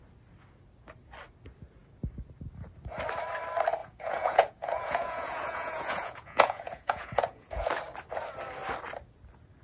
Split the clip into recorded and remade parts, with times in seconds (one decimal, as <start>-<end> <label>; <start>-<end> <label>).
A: 0.0-3.8 recorded; 3.8-7.7 remade; 7.7-9.6 recorded